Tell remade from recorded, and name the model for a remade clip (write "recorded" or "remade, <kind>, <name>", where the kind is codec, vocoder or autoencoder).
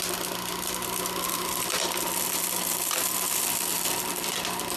recorded